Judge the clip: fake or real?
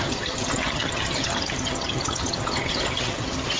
fake